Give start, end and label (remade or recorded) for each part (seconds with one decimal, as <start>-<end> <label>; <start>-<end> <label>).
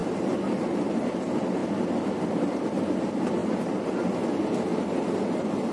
0.0-5.7 recorded